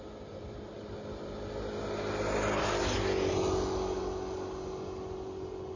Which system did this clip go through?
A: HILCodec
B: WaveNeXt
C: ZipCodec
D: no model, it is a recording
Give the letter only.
D